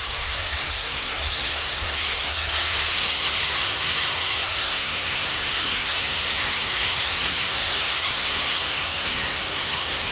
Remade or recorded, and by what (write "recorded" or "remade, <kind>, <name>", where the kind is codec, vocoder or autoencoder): remade, codec, SNAC